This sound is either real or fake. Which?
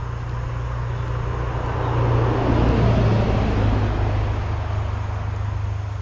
real